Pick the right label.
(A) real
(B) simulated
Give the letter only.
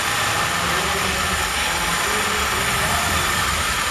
A